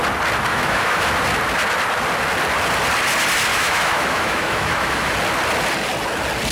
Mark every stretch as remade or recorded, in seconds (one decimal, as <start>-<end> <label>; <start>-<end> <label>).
0.0-0.5 recorded; 0.5-1.1 remade; 1.1-3.5 recorded; 3.5-5.1 remade; 5.1-6.5 recorded